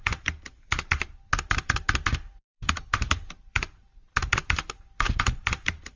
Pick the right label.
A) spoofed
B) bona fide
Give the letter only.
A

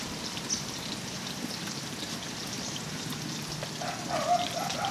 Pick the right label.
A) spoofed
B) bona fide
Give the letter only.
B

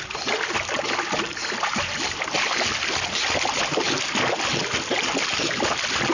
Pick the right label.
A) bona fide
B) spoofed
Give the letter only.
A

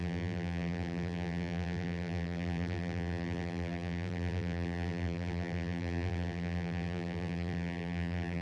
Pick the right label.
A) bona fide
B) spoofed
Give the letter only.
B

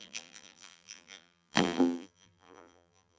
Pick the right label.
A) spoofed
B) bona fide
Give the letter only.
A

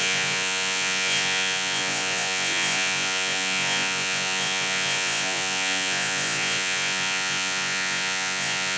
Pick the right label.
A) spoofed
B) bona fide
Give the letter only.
A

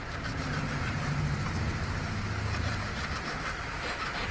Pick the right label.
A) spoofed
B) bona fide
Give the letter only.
A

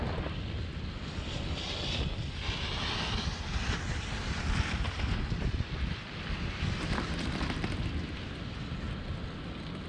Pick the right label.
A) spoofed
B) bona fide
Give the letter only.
B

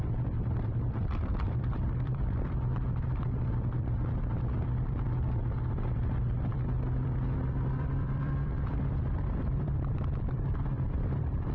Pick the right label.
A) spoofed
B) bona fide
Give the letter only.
A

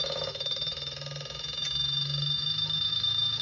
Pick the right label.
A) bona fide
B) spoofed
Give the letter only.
B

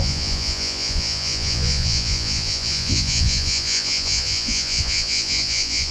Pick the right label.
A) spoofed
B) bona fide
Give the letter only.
A